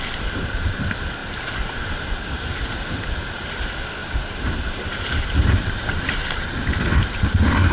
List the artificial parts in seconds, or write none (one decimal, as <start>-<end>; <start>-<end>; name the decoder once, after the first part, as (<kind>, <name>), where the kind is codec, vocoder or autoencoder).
1.2-2.9 (vocoder, BigVGAN v2); 4.0-5.9